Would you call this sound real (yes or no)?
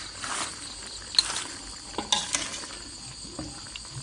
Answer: yes